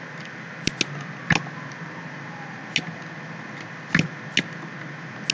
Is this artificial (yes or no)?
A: no